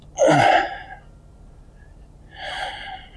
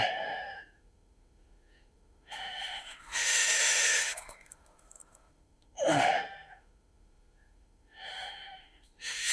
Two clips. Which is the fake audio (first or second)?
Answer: second